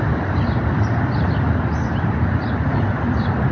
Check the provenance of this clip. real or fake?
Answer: real